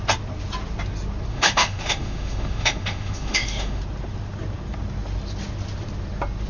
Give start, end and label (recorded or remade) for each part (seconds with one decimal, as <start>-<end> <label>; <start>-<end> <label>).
0.0-1.3 recorded; 1.3-3.8 remade; 3.8-6.5 recorded